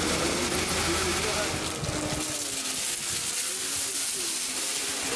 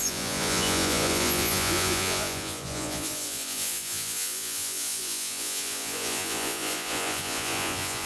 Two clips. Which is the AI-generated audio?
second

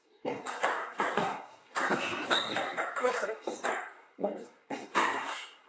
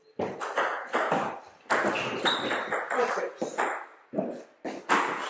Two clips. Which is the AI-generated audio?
first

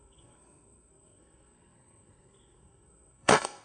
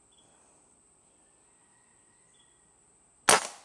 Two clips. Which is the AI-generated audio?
first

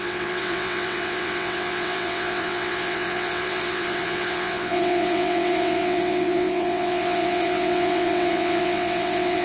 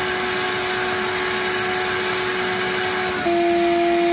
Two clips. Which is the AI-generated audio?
first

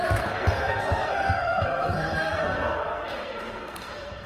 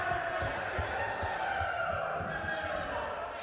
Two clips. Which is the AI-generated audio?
first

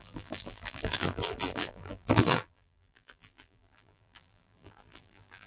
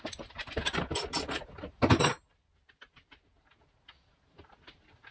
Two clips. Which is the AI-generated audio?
first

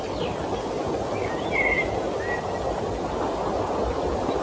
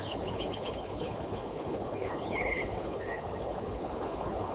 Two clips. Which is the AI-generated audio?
second